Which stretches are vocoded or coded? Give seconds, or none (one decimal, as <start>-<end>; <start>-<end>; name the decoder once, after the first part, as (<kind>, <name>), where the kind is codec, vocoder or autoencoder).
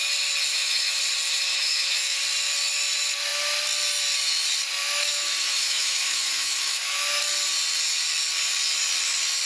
0.5-1.0 (autoencoder, DAC-VAE); 1.5-2.2; 4.8-7.2